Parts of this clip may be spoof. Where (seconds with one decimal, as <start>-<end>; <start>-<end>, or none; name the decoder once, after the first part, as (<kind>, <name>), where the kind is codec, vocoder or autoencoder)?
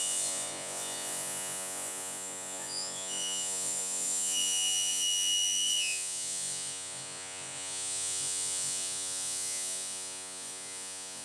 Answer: 0.0-11.2 (vocoder, Vocos)